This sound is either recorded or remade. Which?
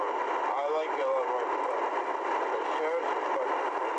recorded